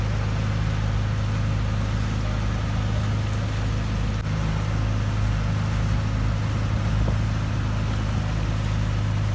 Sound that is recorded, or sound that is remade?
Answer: recorded